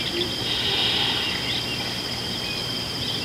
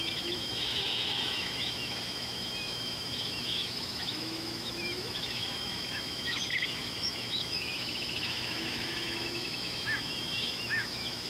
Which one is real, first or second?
first